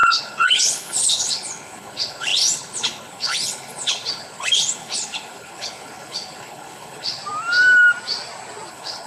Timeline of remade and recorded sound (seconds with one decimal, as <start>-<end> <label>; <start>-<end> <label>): 0.0-7.2 remade; 7.2-8.7 recorded; 8.7-9.1 remade